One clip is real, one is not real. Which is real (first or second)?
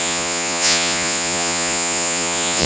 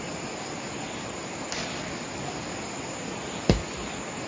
second